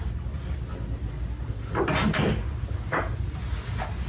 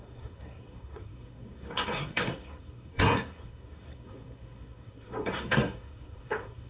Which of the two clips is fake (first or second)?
second